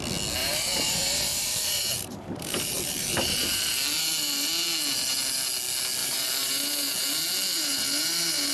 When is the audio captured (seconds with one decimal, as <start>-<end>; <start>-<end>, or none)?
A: 0.0-0.4; 4.0-6.0; 6.5-8.5